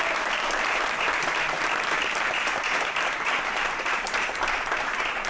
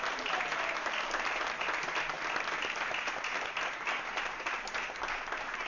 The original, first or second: second